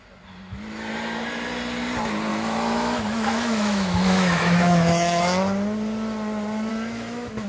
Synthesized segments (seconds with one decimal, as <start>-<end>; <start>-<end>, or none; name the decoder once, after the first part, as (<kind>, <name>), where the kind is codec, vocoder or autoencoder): 2.3-5.2 (autoencoder, DAC-VAE); 6.7-7.5